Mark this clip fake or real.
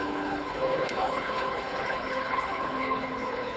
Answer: fake